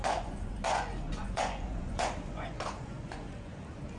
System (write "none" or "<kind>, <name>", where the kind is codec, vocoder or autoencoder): vocoder, Vocos